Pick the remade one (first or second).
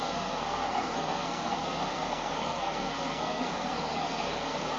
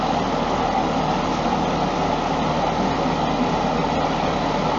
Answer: first